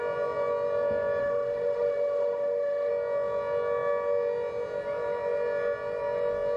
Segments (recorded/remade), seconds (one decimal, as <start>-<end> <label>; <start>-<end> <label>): 0.0-1.2 recorded; 1.2-2.9 remade; 2.9-6.6 recorded